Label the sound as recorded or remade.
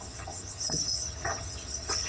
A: remade